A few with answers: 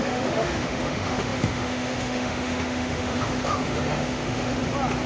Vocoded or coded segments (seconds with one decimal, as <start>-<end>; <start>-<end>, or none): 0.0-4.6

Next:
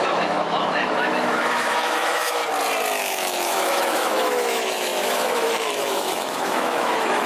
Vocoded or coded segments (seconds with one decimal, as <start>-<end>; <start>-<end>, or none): 0.0-2.4; 3.0-7.3

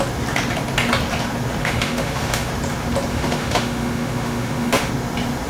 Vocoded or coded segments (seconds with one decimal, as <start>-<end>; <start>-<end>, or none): 1.6-2.5; 3.1-4.9

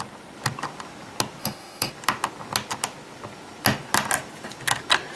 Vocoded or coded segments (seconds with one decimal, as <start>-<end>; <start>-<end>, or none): 1.4-1.9